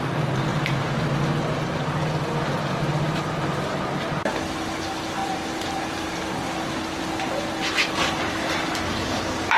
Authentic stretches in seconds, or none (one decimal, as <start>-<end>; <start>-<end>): 0.0-0.5; 1.0-9.6

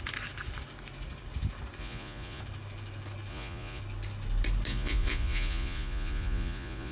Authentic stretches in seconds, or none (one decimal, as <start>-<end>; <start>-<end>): 0.0-1.8; 2.4-3.3; 3.8-4.7